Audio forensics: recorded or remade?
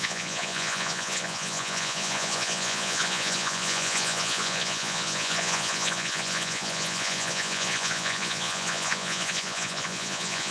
remade